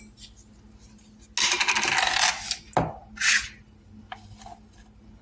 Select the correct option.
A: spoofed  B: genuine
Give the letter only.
B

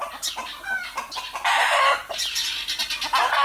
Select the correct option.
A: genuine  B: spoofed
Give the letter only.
A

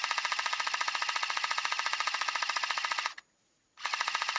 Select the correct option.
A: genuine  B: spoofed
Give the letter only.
B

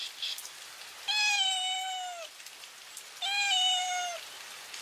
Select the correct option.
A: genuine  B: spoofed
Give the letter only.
A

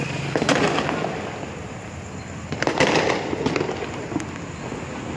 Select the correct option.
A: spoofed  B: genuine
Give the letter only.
B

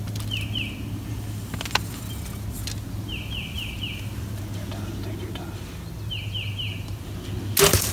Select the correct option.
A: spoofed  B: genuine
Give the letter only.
B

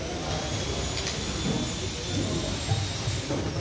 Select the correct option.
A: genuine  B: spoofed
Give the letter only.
A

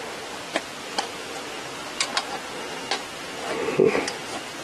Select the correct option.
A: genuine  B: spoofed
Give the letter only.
A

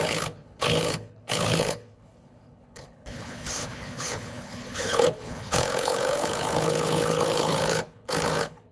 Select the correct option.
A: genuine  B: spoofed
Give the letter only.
B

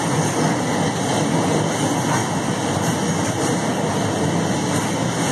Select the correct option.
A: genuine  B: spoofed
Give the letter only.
A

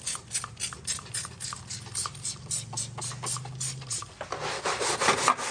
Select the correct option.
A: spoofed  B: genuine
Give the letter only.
B